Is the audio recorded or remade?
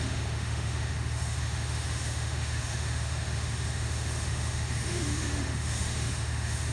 remade